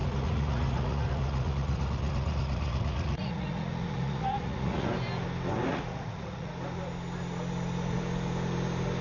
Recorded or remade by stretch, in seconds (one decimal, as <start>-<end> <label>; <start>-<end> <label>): 0.0-4.9 remade; 4.9-5.7 recorded; 5.7-6.5 remade; 6.5-9.0 recorded

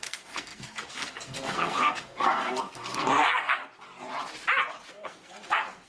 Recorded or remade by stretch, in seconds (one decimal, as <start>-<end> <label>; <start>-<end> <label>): 0.0-3.6 remade; 3.6-4.9 recorded; 4.9-5.9 remade

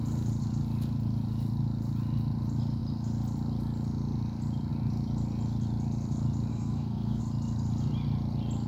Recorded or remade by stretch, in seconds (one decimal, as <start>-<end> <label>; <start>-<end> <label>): 0.0-6.5 recorded; 6.5-7.2 remade; 7.2-8.7 recorded

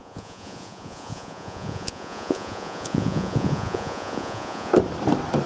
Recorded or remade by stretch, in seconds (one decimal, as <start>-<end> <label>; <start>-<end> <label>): 0.0-4.7 remade; 4.7-5.5 recorded

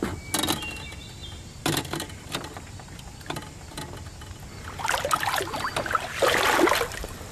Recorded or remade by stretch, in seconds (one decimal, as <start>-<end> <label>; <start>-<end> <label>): 0.0-7.3 recorded